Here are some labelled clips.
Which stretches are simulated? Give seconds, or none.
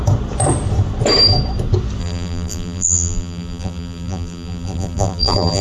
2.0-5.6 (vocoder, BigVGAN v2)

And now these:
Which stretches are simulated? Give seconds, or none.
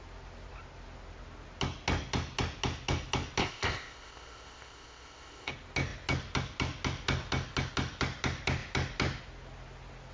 3.4-5.5 (codec, ZipCodec)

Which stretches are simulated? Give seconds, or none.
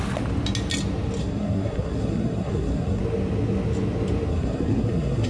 1.2-3.0 (codec, SNAC); 4.3-5.3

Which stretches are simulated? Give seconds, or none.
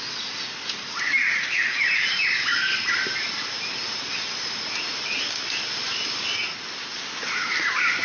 none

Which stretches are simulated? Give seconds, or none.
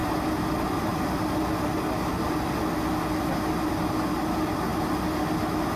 none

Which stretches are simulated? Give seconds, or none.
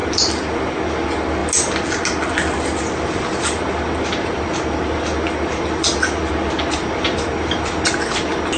none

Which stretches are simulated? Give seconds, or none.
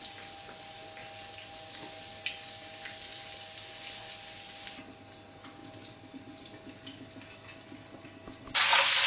none